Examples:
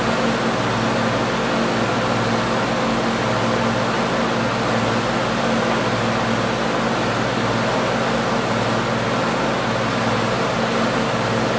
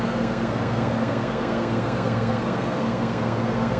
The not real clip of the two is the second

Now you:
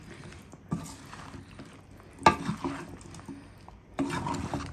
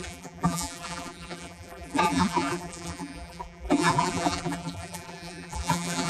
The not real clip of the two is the second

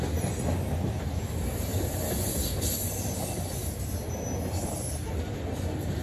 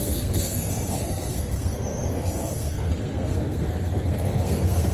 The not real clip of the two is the second